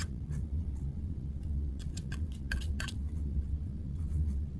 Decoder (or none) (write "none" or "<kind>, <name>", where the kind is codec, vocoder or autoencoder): vocoder, WaveNeXt